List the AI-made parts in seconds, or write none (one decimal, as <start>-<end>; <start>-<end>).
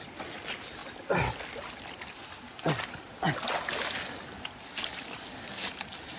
none